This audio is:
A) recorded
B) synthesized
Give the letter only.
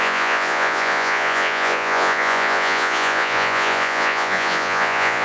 B